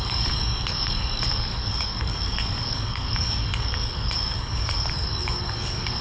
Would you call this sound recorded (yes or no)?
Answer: no